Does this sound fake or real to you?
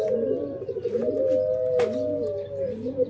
real